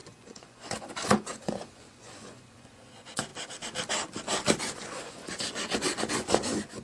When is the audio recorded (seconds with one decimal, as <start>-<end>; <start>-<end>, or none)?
3.3-4.6